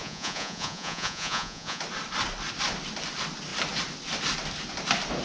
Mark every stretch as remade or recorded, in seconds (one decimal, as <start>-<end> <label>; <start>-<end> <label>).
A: 0.0-1.8 remade; 1.8-5.2 recorded